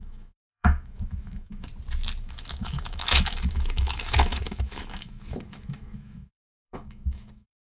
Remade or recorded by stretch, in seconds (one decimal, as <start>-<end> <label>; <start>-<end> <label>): 0.0-1.7 remade; 1.7-2.2 recorded; 2.2-7.7 remade